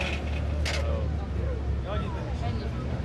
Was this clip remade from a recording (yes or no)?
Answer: no